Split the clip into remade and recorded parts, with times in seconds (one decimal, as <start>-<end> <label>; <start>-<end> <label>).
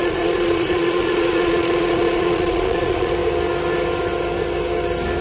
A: 0.0-3.1 remade; 3.1-5.2 recorded